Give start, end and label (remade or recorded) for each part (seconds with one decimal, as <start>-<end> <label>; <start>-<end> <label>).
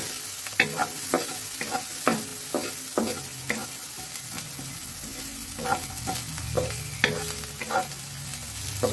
0.0-8.9 recorded